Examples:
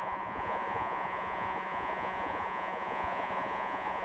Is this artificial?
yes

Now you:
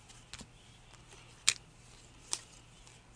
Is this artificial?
no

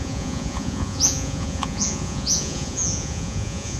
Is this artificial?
yes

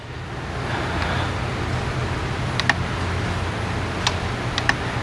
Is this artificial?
no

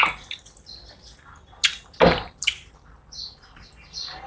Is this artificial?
no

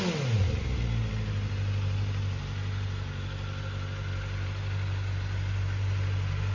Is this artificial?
no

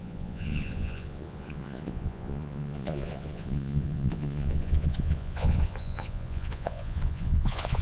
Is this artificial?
yes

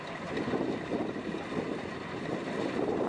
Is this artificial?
no